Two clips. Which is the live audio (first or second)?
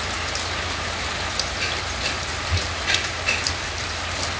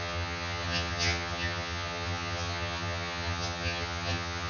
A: first